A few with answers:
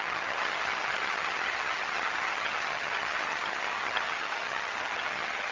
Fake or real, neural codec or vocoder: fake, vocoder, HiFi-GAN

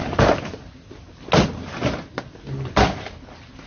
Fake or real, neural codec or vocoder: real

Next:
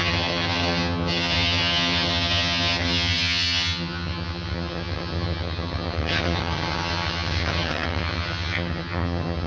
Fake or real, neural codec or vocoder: fake, vocoder, HiFi-GAN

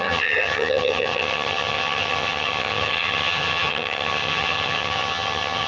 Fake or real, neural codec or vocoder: fake, vocoder, HiFi-GAN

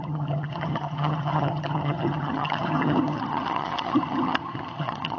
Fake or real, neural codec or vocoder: fake, vocoder, HiFi-GAN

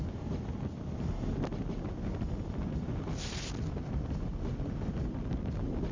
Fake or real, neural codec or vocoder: real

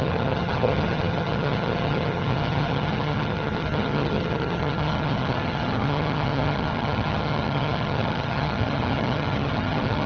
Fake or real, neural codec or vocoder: fake, vocoder, HiFi-GAN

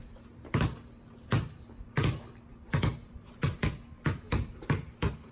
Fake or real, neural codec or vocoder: real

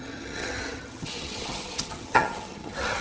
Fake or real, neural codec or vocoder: fake, vocoder, HiFi-GAN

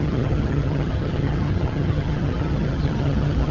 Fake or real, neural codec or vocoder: fake, vocoder, HiFi-GAN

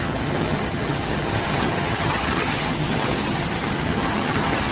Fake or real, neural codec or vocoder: fake, vocoder, HiFi-GAN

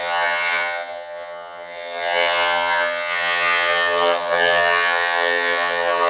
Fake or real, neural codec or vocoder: fake, vocoder, HiFi-GAN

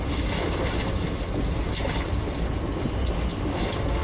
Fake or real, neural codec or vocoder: real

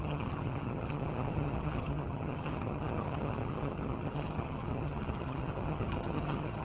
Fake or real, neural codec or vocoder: fake, vocoder, HiFi-GAN